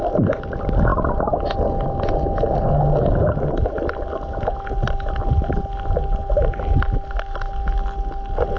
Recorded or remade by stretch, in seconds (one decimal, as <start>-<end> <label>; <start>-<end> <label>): 0.0-8.6 recorded